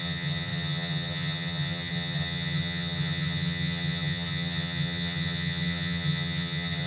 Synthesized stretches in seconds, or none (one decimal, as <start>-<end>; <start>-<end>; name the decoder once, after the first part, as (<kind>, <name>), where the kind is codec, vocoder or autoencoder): 0.0-6.9 (vocoder, HiFi-GAN)